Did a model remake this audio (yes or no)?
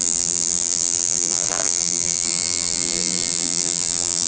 yes